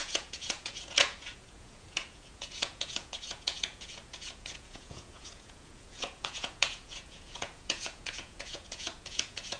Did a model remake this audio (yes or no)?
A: yes